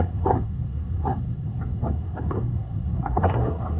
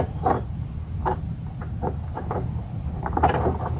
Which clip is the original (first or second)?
second